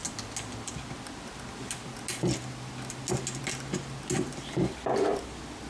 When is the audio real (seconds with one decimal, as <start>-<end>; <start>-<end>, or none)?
0.0-5.7